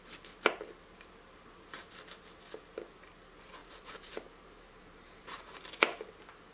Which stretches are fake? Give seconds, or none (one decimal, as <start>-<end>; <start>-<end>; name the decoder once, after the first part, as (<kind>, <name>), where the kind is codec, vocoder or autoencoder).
3.6-5.6 (vocoder, BigVGAN v2)